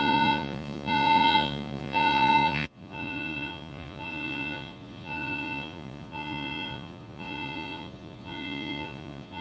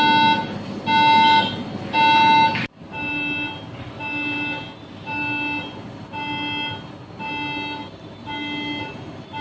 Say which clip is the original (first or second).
second